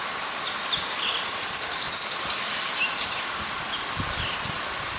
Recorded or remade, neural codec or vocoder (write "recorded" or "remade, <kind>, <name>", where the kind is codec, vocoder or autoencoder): recorded